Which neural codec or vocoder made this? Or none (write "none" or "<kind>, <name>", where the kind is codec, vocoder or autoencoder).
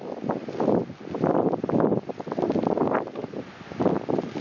none